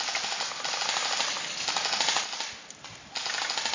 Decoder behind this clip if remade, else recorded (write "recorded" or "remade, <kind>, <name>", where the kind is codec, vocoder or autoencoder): recorded